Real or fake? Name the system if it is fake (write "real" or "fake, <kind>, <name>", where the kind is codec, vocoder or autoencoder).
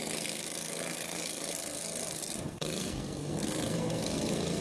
fake, codec, SNAC